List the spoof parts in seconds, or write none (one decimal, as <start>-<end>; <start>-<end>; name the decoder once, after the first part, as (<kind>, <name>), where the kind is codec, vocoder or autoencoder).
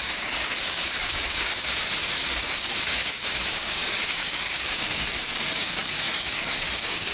0.0-7.1 (codec, DAC)